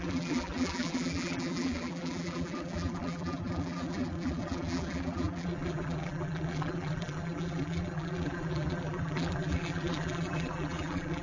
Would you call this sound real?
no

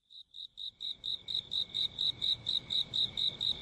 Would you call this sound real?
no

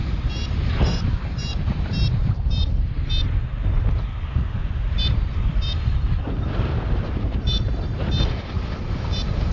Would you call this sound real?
no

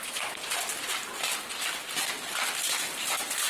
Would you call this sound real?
yes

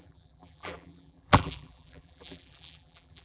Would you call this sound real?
no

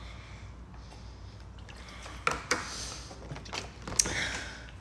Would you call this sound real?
yes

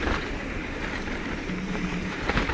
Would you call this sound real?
no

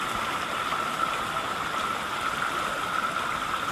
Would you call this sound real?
yes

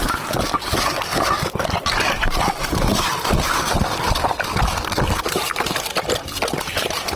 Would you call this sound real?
no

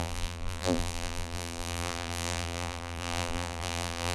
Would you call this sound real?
no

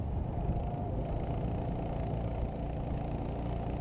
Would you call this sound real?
yes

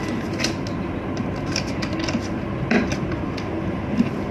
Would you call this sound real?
yes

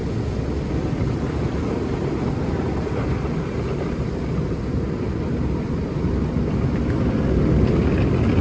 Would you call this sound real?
yes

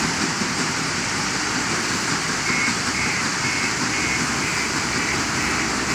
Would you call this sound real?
no